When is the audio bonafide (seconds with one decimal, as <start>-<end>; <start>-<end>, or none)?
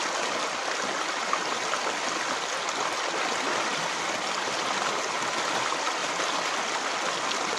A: 0.0-1.2; 1.9-6.0; 6.5-7.6